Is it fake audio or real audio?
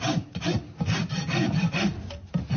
real